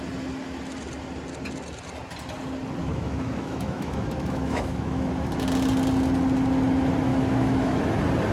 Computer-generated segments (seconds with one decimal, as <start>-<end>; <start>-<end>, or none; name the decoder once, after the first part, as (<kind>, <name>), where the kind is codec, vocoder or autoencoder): 2.8-5.1 (autoencoder, DAC-VAE); 7.1-7.8